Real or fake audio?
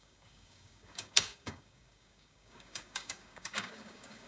fake